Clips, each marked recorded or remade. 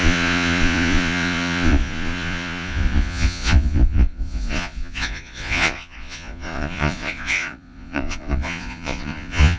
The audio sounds remade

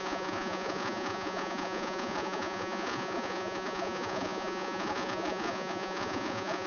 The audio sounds remade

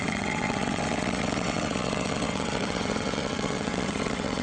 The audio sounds remade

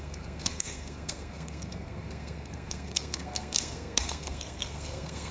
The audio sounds remade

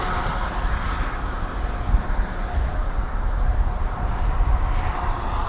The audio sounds recorded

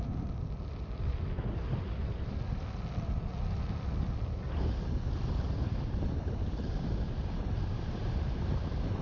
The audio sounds recorded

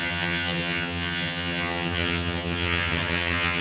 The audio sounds remade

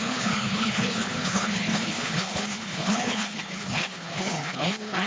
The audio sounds remade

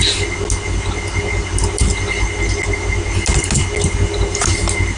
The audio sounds recorded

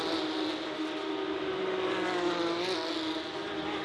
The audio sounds recorded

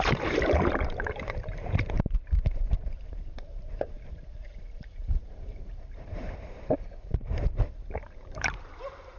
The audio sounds remade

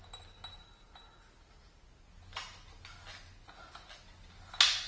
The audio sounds recorded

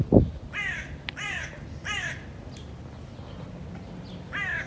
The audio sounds recorded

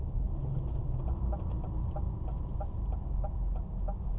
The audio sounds recorded